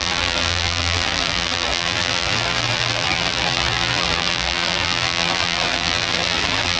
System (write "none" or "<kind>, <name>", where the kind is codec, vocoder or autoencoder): vocoder, BigVGAN v2